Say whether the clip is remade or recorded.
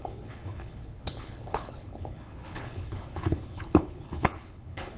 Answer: remade